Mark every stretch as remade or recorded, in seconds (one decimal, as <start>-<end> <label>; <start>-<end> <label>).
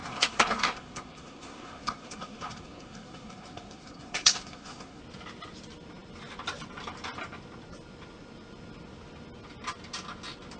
0.0-5.0 remade; 5.0-10.6 recorded